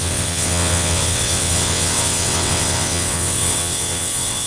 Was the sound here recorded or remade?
remade